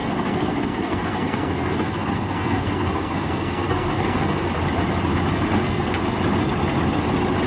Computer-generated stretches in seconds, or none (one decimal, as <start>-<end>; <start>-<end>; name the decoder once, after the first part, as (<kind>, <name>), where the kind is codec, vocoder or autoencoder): 0.0-4.5 (codec, SNAC); 5.5-6.0